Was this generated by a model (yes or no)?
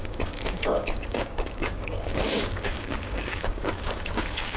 yes